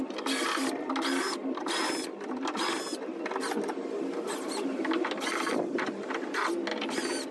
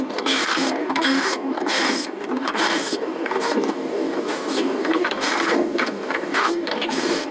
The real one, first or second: first